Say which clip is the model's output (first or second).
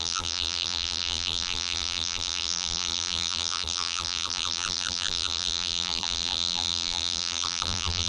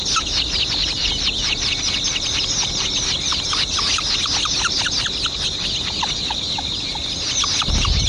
first